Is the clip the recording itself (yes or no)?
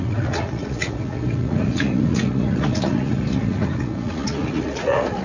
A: no